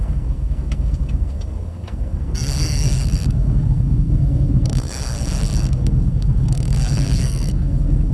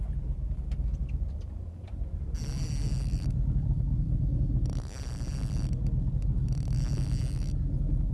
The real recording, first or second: second